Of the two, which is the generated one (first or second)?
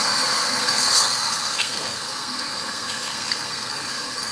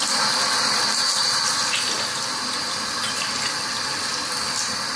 first